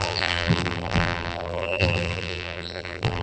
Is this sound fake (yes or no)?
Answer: yes